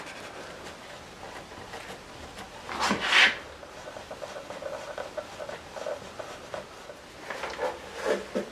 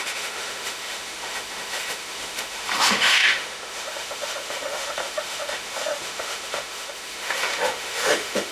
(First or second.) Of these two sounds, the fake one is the second